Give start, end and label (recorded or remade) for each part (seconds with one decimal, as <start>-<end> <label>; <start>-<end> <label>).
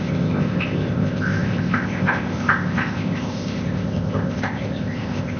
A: 0.0-5.4 remade